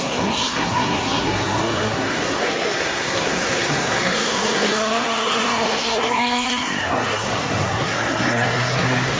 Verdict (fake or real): fake